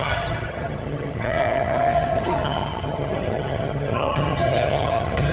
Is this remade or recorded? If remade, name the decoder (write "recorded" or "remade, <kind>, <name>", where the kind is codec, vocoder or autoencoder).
remade, vocoder, HiFi-GAN